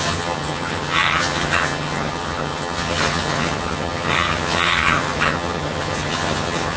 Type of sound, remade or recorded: remade